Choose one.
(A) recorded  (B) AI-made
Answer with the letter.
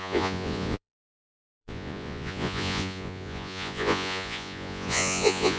B